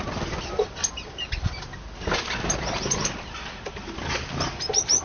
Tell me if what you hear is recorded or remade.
recorded